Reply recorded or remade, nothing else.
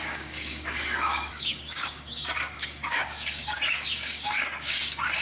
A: remade